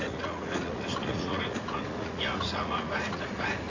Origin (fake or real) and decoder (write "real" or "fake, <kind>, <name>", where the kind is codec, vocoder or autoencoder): fake, vocoder, Vocos